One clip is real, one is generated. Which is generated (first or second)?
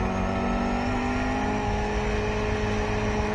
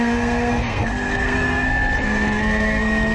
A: second